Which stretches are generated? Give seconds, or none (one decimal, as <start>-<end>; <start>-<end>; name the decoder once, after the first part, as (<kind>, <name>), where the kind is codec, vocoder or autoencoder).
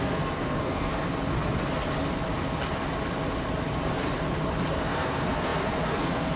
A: 0.0-0.9 (codec, SNAC); 4.7-6.4